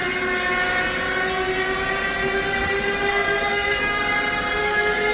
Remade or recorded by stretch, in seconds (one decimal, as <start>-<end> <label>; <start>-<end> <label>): 0.0-3.1 recorded; 3.1-4.0 remade; 4.0-4.6 recorded; 4.6-5.1 remade